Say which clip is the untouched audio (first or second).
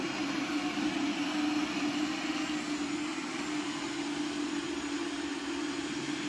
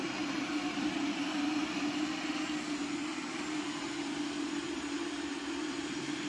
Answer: first